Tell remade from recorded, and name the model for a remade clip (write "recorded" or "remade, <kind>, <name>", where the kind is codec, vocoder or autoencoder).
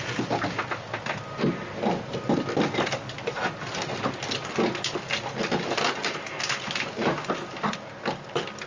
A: recorded